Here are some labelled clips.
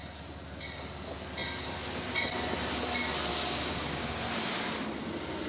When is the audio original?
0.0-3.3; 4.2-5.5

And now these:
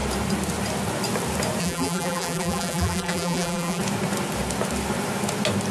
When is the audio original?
0.0-1.6; 3.8-5.7

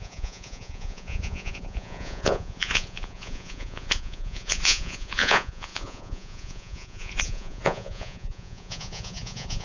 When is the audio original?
none

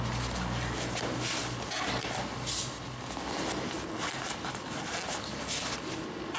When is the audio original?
0.0-6.4

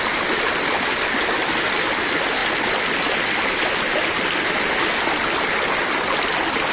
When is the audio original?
0.0-6.7